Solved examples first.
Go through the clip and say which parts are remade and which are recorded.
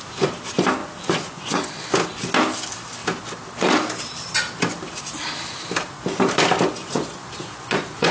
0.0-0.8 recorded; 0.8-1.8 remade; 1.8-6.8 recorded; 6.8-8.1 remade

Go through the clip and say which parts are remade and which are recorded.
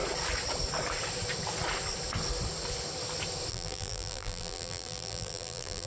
0.0-3.5 recorded; 3.5-5.9 remade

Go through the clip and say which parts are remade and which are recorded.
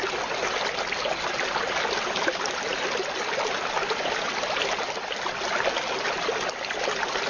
0.0-7.3 recorded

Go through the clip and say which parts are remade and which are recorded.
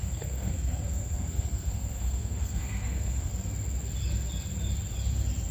0.0-3.3 remade; 3.3-5.5 recorded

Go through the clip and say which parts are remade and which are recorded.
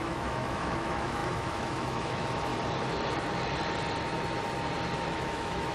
0.0-2.5 remade; 2.5-5.1 recorded; 5.1-5.7 remade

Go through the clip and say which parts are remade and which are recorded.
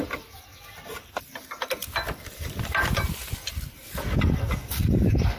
0.0-1.8 remade; 1.8-2.3 recorded; 2.3-3.2 remade; 3.2-4.2 recorded; 4.2-5.4 remade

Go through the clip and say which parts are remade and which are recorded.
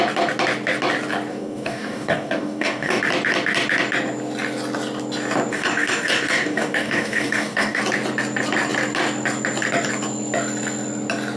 0.0-1.3 recorded; 1.3-3.0 remade; 3.0-5.5 recorded; 5.5-7.8 remade; 7.8-11.4 recorded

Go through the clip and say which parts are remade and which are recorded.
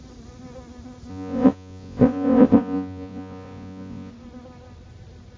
0.0-1.1 recorded; 1.1-4.1 remade; 4.1-5.4 recorded